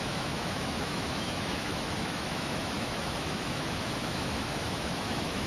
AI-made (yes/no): yes